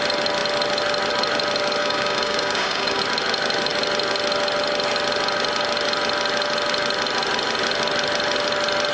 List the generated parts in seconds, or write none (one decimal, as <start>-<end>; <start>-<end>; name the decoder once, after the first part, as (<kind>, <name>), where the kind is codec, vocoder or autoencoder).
1.8-3.0 (codec, DAC)